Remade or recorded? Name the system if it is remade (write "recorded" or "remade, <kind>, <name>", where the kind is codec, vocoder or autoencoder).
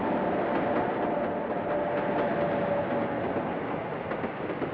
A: recorded